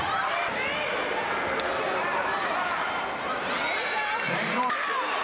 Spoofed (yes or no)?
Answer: no